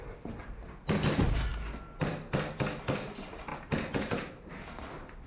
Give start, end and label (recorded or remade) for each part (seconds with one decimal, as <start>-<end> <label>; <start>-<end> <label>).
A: 0.0-5.3 recorded